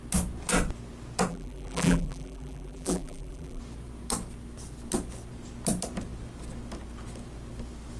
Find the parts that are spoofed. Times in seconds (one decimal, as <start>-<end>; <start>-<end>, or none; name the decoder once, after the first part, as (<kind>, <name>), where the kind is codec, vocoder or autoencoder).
1.3-3.6 (vocoder, BigVGAN v2)